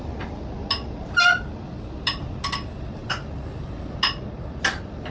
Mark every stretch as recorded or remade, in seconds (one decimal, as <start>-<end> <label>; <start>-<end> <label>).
0.0-5.1 recorded

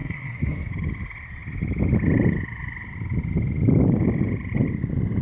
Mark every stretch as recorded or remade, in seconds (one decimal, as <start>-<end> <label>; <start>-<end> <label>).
0.0-0.7 remade; 0.7-5.2 recorded

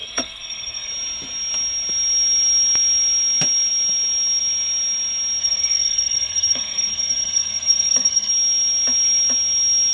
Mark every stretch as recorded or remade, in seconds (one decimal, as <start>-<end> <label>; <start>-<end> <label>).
0.0-0.9 remade; 0.9-5.4 recorded; 5.4-8.3 remade; 8.3-9.9 recorded

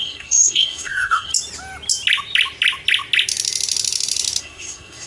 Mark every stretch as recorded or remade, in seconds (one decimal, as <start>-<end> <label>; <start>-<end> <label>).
0.0-1.3 remade; 1.3-4.4 recorded; 4.4-5.1 remade

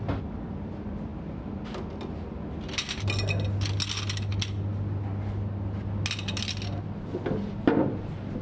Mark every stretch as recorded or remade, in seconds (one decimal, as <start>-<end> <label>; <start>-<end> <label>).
0.0-8.4 recorded

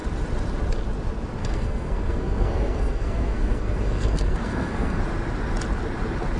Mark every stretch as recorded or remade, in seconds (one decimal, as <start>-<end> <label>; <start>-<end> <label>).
0.0-1.4 recorded; 1.4-5.0 remade; 5.0-6.4 recorded